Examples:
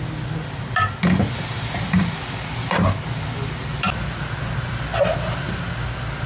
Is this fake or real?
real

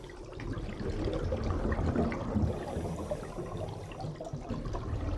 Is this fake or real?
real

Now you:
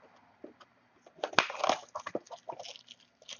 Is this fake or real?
real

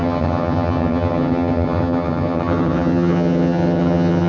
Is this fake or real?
fake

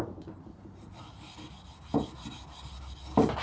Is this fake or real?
real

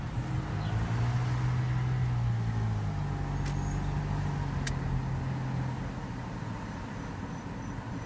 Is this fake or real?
real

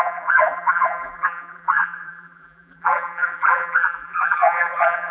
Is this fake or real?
fake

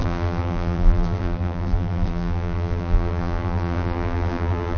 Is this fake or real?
fake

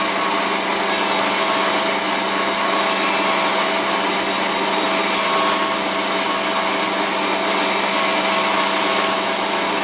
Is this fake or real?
real